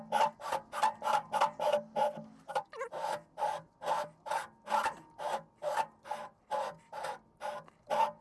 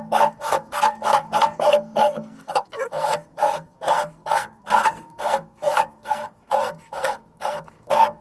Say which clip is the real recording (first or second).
first